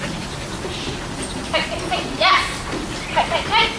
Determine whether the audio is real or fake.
real